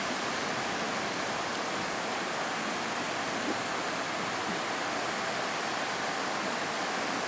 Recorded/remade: recorded